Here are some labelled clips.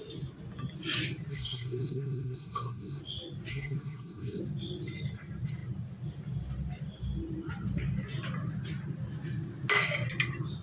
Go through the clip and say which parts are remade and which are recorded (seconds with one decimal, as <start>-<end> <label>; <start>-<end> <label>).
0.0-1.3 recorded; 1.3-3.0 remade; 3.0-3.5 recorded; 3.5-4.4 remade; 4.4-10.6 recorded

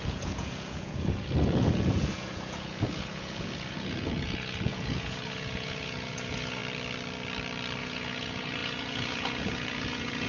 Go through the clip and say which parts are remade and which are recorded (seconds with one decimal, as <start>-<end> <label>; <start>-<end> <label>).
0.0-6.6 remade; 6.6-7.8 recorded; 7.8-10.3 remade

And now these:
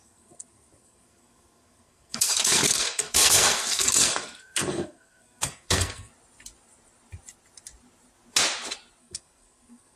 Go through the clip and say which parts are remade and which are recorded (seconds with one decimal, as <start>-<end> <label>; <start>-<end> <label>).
0.0-6.1 remade; 6.1-9.0 recorded; 9.0-10.0 remade

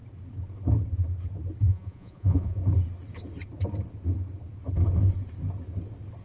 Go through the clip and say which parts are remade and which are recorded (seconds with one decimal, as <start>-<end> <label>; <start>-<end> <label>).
0.0-1.6 recorded; 1.6-2.6 remade; 2.6-6.2 recorded

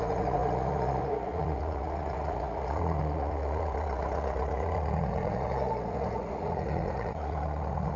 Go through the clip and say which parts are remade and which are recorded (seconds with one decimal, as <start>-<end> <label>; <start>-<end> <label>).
0.0-8.0 remade

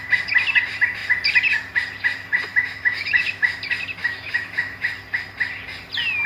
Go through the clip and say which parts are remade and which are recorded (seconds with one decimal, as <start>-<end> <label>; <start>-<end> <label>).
0.0-2.5 recorded; 2.5-3.6 remade; 3.6-4.0 recorded; 4.0-4.8 remade; 4.8-6.3 recorded